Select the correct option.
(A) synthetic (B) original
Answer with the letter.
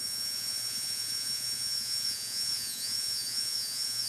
A